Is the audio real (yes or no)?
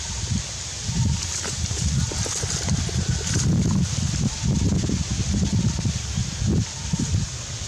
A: yes